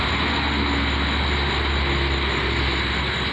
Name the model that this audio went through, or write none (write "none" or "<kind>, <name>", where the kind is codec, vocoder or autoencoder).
none